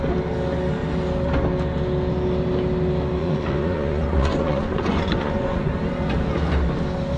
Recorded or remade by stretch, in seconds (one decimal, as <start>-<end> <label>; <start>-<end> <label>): 0.0-3.2 recorded; 3.2-5.7 remade; 5.7-7.2 recorded